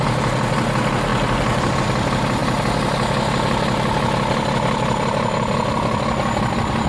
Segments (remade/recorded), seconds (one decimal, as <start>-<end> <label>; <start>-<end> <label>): 0.0-6.9 recorded

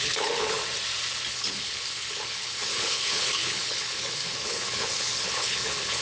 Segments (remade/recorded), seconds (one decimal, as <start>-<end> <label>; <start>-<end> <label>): 0.0-0.6 remade; 0.6-1.3 recorded; 1.3-6.0 remade

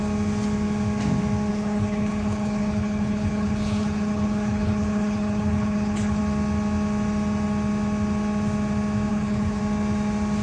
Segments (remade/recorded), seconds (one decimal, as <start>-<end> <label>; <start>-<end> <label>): 0.0-1.5 recorded; 1.5-6.2 remade; 6.2-9.1 recorded; 9.1-9.6 remade; 9.6-10.4 recorded

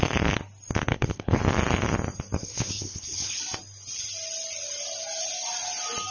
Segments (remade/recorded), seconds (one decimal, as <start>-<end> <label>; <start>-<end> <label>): 0.0-0.9 recorded; 0.9-1.4 remade; 1.4-2.4 recorded; 2.4-3.4 remade; 3.4-6.1 recorded

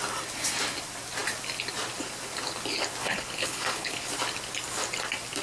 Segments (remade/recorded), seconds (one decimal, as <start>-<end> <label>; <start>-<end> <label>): 0.0-3.0 recorded; 3.0-4.1 remade; 4.1-5.4 recorded